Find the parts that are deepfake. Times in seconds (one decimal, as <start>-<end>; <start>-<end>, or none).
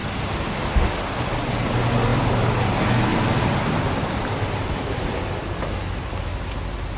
none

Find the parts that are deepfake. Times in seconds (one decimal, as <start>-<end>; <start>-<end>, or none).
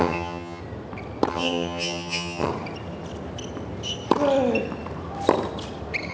0.0-0.6; 1.3-2.5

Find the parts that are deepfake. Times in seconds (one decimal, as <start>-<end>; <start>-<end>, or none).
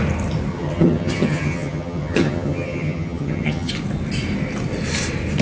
0.5-3.7